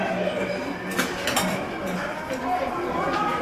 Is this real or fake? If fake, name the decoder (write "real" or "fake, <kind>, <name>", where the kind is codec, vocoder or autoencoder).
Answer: real